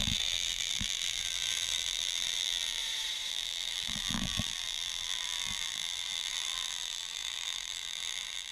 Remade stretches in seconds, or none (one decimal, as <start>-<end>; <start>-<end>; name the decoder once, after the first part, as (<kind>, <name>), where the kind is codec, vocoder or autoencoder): 0.0-2.8 (vocoder, BigVGAN v2); 3.3-8.5